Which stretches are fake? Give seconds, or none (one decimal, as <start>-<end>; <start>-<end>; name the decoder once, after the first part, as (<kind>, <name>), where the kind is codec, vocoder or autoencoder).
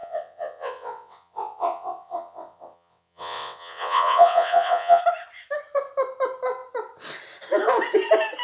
0.0-5.0 (vocoder, WaveNeXt)